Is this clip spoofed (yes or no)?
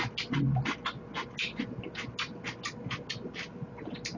no